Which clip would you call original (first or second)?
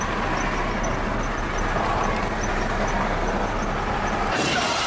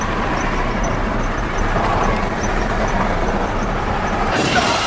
first